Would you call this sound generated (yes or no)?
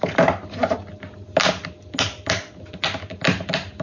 no